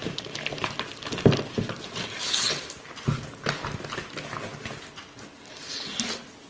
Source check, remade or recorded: recorded